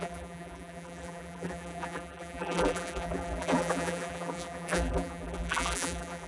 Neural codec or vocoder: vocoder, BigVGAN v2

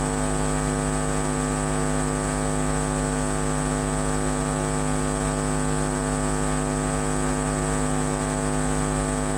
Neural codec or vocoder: none